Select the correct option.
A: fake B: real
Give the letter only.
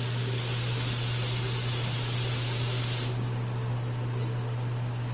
B